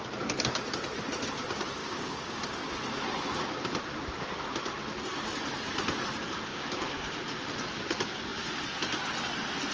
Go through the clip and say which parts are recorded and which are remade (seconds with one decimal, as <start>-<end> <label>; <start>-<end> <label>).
0.0-1.8 recorded; 1.8-2.4 remade; 2.4-6.5 recorded; 6.5-7.2 remade; 7.2-9.7 recorded